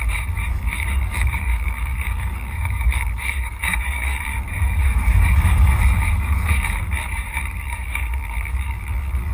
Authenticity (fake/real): fake